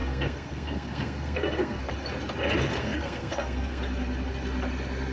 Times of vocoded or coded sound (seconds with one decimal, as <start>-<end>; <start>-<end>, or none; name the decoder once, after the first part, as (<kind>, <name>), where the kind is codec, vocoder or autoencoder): 0.0-1.9 (codec, SNAC); 2.8-3.8